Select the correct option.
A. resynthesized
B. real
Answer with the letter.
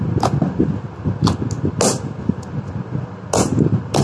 B